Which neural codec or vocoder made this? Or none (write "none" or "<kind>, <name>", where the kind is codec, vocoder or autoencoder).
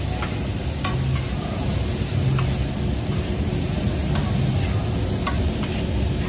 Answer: none